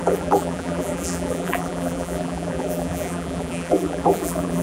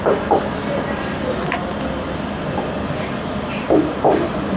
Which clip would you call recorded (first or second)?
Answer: second